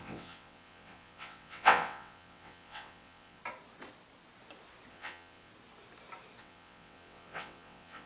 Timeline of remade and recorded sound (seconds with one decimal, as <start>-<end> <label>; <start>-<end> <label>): 0.0-3.4 remade; 3.4-4.9 recorded; 4.9-5.5 remade; 5.5-6.4 recorded; 6.4-8.1 remade